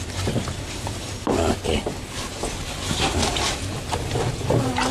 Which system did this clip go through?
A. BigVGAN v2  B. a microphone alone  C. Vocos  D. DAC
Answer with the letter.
B